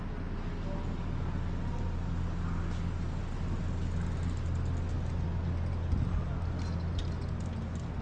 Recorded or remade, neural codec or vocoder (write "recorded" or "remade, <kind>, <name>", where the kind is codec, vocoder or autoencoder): recorded